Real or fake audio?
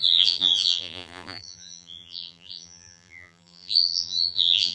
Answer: fake